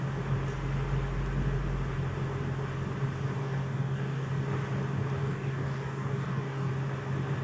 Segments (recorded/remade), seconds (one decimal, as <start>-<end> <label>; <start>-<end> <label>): 0.0-3.4 recorded; 3.4-4.3 remade; 4.3-5.2 recorded; 5.2-6.7 remade; 6.7-7.4 recorded